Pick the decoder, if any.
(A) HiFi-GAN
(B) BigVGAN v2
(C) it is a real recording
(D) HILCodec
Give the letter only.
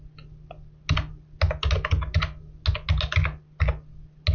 C